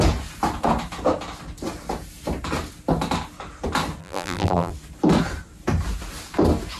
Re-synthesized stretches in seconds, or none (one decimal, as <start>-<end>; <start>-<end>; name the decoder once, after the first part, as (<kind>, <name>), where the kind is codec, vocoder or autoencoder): 4.0-4.7 (vocoder, BigVGAN v2)